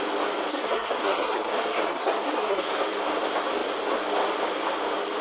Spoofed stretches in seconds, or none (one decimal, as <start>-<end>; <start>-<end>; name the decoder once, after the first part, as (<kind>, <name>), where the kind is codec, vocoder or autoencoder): 0.5-2.7 (codec, SNAC)